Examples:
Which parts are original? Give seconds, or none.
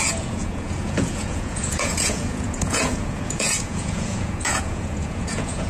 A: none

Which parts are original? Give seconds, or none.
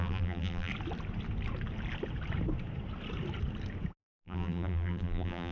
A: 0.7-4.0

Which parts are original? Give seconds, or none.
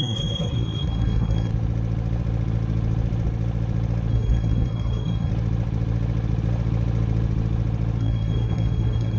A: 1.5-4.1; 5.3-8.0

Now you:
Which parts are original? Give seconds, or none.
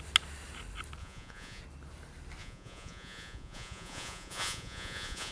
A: 0.0-1.0; 1.6-2.4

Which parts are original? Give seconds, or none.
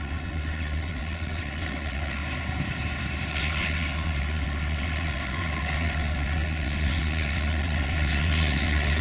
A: 2.2-3.3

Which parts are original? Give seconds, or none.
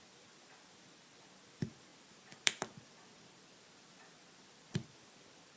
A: 0.0-1.9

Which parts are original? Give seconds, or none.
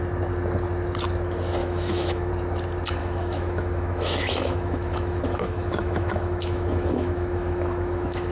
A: 0.0-1.6; 2.3-3.0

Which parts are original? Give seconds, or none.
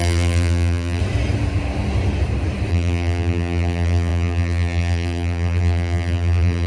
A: 1.0-2.7